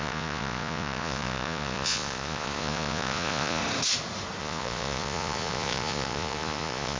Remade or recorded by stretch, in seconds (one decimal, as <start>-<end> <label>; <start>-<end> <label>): 0.0-3.6 remade; 3.6-4.4 recorded; 4.4-7.0 remade